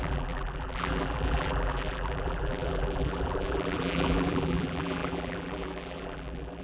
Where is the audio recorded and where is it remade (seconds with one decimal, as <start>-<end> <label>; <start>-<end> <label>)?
0.0-6.6 remade